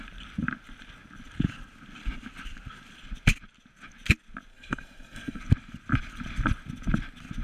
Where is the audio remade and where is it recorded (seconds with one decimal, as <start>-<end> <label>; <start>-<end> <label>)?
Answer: 0.0-4.5 recorded; 4.5-5.4 remade; 5.4-7.4 recorded